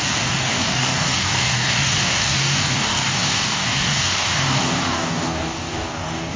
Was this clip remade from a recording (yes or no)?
yes